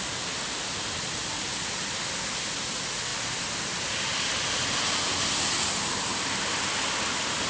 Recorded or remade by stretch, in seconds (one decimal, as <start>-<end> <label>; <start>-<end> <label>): 0.0-7.5 recorded